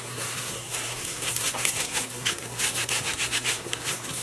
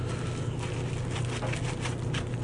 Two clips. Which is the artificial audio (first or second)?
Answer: first